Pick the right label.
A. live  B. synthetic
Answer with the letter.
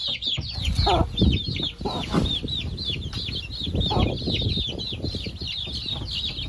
A